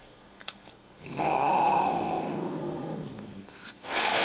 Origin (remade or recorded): remade